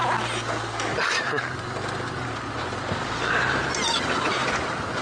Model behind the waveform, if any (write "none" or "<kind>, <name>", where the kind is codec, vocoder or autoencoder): none